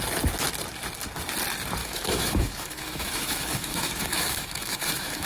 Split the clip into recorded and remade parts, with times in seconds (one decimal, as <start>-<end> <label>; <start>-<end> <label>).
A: 0.0-1.8 recorded; 1.8-5.3 remade